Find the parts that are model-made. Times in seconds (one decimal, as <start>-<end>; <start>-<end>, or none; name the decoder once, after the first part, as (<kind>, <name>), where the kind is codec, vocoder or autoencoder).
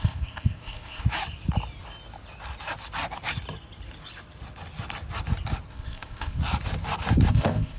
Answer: 0.0-1.0 (codec, ZipCodec); 5.7-6.4; 7.3-7.8